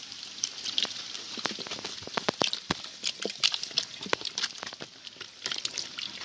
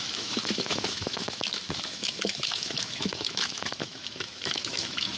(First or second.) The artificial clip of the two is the second